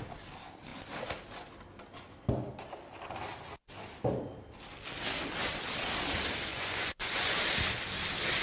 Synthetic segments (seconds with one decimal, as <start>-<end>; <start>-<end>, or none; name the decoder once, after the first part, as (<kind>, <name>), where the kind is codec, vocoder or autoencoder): 6.5-7.4 (vocoder, Vocos)